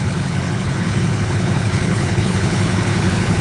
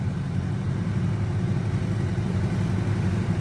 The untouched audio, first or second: second